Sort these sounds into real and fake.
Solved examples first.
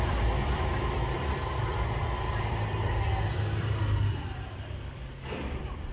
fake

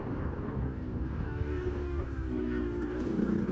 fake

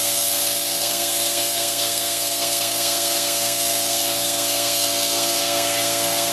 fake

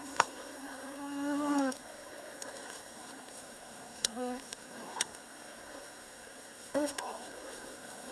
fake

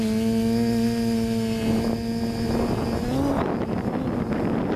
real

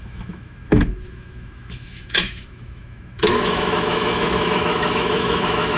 fake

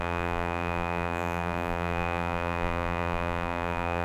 fake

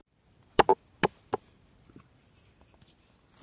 real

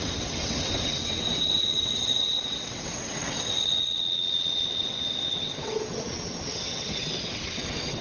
fake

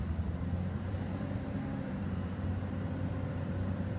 fake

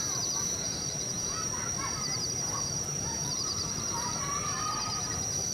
fake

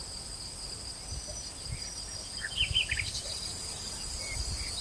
real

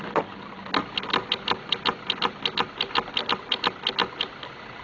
real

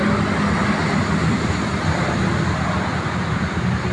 real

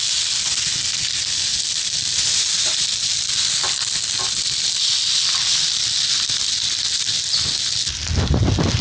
real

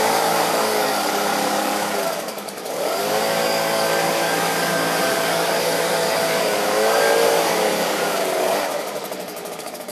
fake